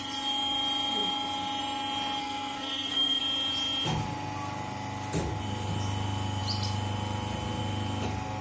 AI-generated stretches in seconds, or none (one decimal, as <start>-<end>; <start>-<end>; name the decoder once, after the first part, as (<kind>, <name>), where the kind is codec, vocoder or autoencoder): 2.2-3.2 (codec, SNAC)